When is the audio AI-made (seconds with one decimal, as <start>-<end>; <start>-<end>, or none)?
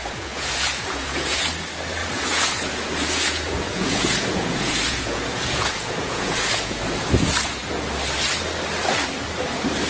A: 0.0-1.4; 2.0-6.8